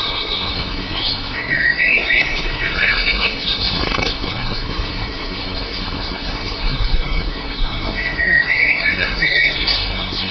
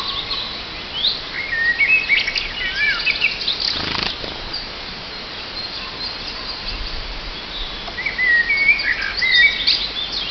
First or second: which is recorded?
second